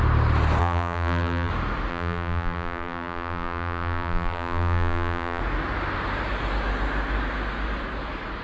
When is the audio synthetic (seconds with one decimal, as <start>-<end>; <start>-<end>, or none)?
0.6-1.5; 1.9-5.4